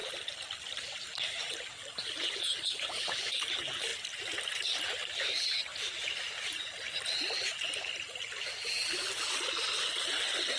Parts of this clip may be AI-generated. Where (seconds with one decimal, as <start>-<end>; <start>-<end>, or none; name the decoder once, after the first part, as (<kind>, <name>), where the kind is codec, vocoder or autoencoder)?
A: none

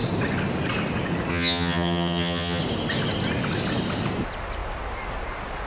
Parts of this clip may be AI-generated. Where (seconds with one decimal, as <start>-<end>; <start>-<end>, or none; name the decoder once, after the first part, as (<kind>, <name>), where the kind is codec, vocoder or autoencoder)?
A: 1.3-2.6 (vocoder, HiFi-GAN)

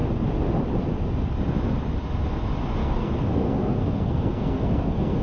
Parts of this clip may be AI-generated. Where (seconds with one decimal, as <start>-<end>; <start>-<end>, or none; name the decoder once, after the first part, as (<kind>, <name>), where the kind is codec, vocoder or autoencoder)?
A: 2.8-5.2 (codec, SNAC)

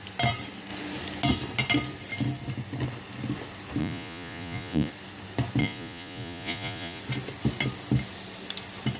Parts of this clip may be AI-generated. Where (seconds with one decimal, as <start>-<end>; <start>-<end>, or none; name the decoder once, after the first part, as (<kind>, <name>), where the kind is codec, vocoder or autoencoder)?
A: 3.8-4.9 (vocoder, Vocos); 5.6-7.0

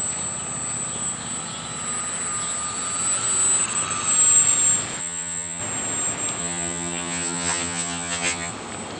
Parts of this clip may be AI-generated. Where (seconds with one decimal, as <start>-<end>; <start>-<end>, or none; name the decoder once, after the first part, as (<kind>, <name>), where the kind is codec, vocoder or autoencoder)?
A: 5.0-5.6 (vocoder, HiFi-GAN); 6.4-8.5

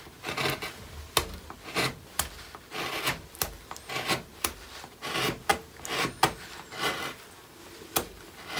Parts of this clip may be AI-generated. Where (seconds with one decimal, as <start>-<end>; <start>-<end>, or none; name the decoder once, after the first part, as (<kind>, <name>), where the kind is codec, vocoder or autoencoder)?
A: none

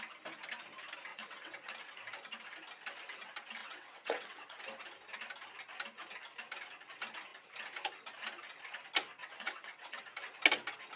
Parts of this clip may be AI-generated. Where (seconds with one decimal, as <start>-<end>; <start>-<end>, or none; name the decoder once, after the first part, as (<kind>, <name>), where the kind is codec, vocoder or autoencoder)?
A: 1.1-1.7 (vocoder, WaveNeXt); 3.6-4.6; 9.2-10.0

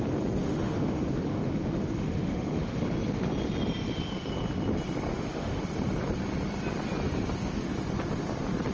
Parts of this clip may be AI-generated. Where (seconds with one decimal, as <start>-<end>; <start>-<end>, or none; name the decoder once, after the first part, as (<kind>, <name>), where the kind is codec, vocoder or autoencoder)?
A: 0.4-2.8 (autoencoder, DAC-VAE); 5.1-5.6